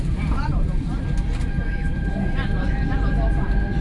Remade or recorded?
recorded